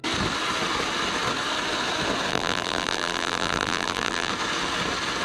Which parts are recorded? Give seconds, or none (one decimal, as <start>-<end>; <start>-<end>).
0.0-2.3; 4.3-5.2

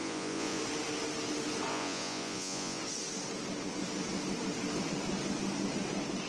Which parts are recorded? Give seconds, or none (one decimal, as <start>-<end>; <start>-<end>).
0.6-1.7; 2.8-6.3

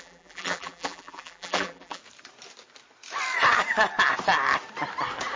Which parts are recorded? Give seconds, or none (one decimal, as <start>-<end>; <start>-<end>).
2.0-5.4

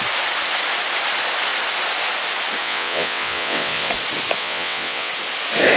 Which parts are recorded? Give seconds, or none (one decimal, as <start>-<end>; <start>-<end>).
0.0-2.6; 3.9-4.4; 5.1-5.8

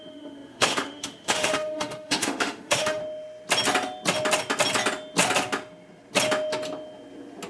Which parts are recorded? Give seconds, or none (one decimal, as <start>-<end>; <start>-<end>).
3.0-7.5